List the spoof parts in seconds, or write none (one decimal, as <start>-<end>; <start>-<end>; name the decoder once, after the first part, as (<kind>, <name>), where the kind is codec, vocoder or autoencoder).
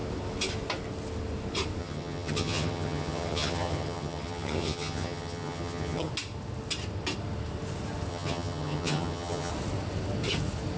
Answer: 1.8-6.1 (vocoder, HiFi-GAN); 8.1-9.5